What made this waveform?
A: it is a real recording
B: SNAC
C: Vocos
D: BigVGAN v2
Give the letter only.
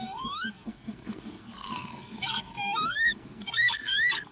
B